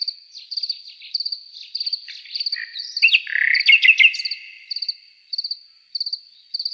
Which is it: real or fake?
real